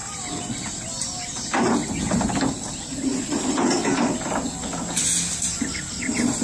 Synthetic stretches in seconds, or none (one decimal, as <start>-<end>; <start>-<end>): none